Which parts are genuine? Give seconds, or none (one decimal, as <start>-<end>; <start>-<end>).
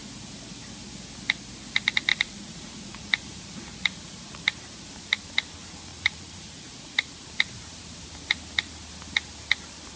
0.0-2.1; 4.4-5.9; 7.3-10.0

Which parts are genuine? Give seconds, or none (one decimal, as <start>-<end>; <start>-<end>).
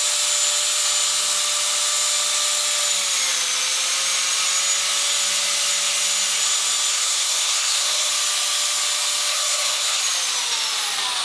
0.0-6.9; 8.1-9.3; 10.0-11.2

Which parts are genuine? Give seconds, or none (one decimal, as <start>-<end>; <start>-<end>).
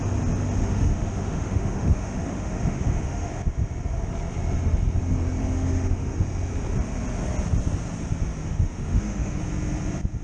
0.0-0.6; 3.3-5.4; 6.2-8.4; 9.4-10.2